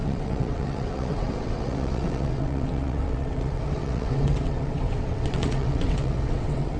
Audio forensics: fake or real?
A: fake